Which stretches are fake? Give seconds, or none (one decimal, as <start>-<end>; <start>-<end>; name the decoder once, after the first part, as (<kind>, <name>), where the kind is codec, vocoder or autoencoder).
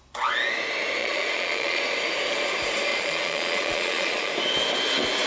1.0-1.8 (vocoder, Vocos); 2.9-4.3